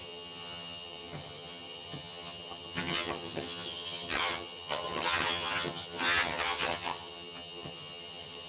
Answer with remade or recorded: remade